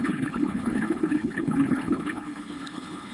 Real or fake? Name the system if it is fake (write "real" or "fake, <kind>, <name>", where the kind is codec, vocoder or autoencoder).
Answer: fake, codec, HILCodec